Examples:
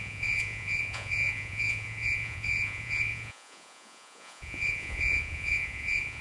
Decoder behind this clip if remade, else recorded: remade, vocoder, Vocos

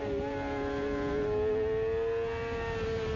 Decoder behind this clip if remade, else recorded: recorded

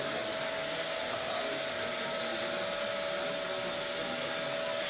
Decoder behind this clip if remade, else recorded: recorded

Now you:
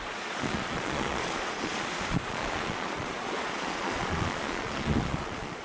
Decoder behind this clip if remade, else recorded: remade, vocoder, Vocos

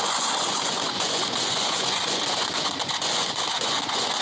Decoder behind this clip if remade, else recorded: remade, vocoder, Vocos